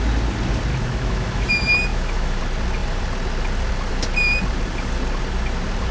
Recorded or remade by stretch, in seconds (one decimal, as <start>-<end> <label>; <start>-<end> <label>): 0.0-0.7 recorded; 0.7-1.5 remade; 1.5-1.9 recorded; 1.9-2.4 remade; 2.4-5.9 recorded